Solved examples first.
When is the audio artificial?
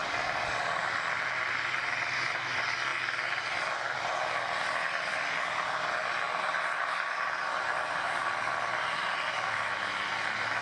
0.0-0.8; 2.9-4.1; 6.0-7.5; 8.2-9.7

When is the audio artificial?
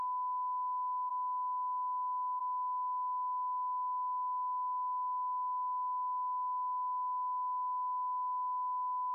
none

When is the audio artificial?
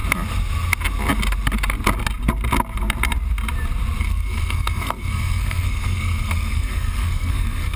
4.0-7.8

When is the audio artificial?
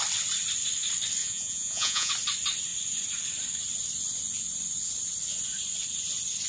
1.2-2.1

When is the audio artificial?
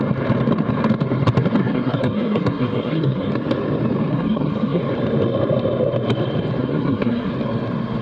1.6-3.3; 4.1-4.8; 6.6-7.3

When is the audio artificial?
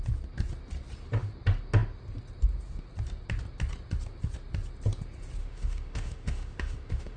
5.4-7.2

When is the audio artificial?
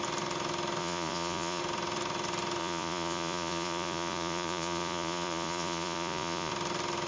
0.8-1.6; 2.6-6.5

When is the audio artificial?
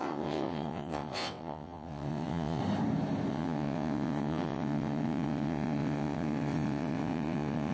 0.0-2.6; 3.3-7.7